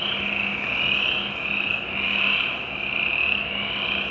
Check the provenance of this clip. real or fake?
real